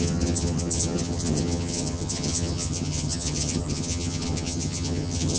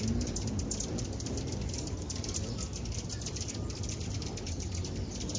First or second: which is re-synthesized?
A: first